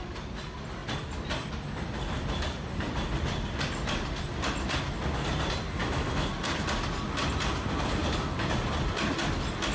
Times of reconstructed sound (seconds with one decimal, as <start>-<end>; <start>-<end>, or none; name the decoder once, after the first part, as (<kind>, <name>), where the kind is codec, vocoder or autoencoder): 5.8-6.3 (autoencoder, DAC-VAE)